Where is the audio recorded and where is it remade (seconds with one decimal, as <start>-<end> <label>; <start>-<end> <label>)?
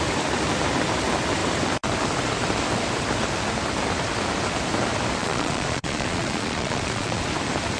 0.0-5.2 recorded; 5.2-7.2 remade; 7.2-7.8 recorded